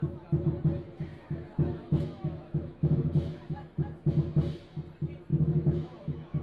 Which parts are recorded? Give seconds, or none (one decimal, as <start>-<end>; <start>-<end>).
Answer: 0.0-1.1; 4.1-5.3

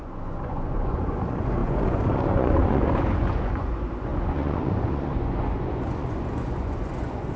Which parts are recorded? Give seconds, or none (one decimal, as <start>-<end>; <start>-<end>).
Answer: none

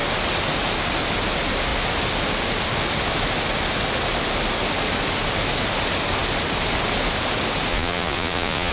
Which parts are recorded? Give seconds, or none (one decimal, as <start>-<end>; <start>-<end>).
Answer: 0.0-7.7

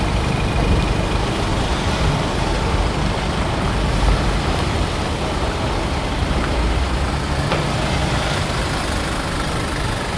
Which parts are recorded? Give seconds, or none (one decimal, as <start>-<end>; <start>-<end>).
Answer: 0.0-1.5; 5.6-10.2

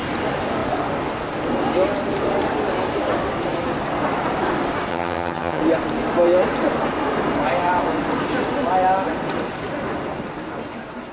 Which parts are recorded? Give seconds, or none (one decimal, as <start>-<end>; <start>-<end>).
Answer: 0.0-4.9; 5.6-11.1

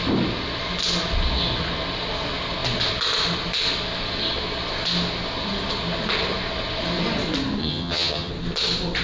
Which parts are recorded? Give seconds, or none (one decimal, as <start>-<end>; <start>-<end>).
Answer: 0.0-7.6; 8.3-9.0

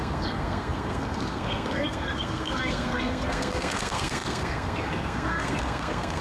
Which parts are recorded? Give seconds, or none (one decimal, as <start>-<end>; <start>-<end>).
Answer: none

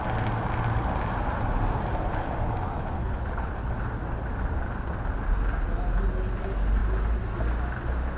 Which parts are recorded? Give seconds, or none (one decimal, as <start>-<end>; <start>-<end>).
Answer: 0.0-3.0; 3.7-8.2